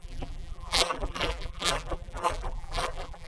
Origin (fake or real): fake